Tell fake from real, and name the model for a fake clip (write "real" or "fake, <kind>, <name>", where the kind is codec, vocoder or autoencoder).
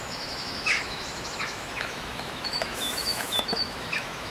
fake, autoencoder, DAC-VAE